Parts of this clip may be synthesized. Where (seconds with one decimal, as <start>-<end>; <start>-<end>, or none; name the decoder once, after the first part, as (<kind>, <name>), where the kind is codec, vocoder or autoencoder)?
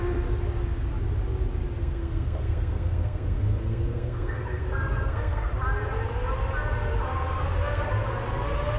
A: 1.8-5.5 (codec, SNAC); 7.0-7.8